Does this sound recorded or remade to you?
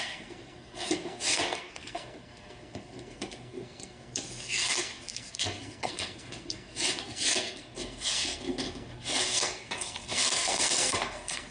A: remade